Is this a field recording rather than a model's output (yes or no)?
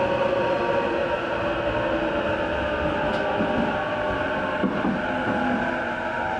yes